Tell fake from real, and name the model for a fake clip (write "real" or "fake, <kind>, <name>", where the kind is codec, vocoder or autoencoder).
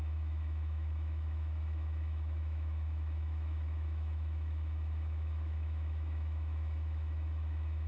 fake, autoencoder, DAC-VAE